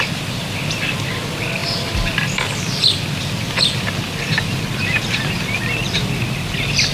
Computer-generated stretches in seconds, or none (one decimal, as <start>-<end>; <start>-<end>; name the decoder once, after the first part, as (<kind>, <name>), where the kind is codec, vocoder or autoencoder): none